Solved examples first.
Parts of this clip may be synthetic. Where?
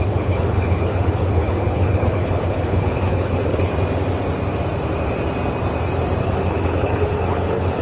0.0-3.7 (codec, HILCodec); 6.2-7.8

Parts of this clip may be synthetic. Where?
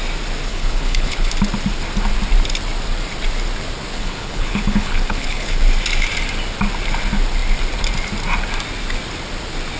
0.5-1.3 (codec, HILCodec); 3.9-5.6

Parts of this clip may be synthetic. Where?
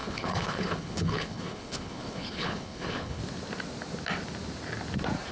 0.0-3.2 (codec, HILCodec)